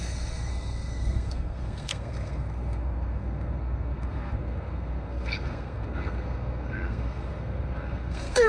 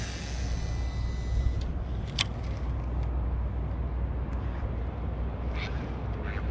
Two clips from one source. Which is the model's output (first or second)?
first